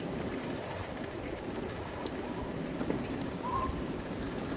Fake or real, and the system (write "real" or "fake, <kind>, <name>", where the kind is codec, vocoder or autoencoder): fake, vocoder, BigVGAN v2